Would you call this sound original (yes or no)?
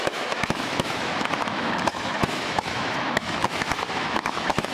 no